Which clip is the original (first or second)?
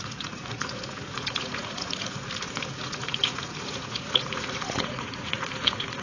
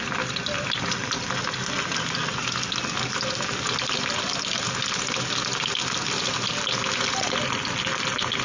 second